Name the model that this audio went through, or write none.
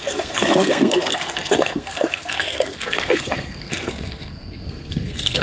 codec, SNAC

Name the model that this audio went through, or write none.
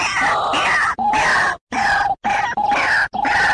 none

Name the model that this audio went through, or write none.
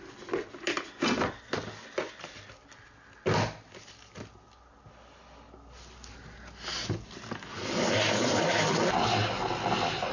none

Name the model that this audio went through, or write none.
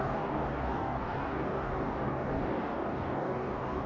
codec, DAC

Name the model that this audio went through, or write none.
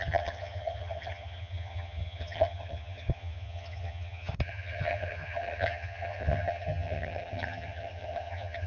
vocoder, HiFi-GAN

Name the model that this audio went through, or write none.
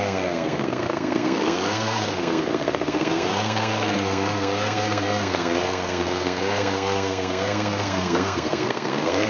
codec, SNAC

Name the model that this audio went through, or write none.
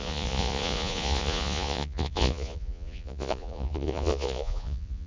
vocoder, Vocos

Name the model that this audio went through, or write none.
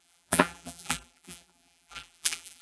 vocoder, BigVGAN v2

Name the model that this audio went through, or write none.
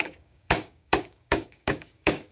codec, DAC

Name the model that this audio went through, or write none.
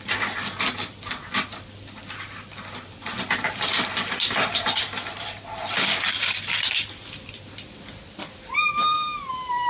none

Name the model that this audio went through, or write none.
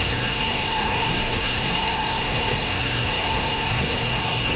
codec, SNAC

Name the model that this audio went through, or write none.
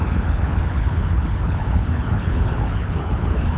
codec, HILCodec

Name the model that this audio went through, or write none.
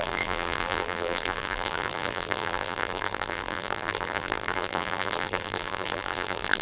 vocoder, BigVGAN v2